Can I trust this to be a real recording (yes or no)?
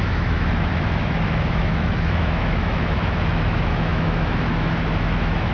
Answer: no